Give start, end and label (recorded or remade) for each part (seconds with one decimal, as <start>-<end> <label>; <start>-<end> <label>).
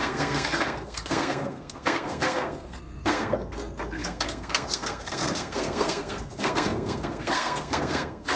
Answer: 0.0-8.4 remade